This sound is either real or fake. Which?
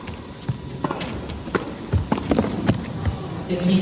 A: real